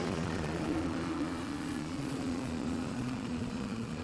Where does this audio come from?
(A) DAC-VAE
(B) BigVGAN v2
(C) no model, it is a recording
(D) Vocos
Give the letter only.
D